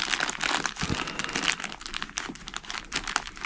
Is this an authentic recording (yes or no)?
yes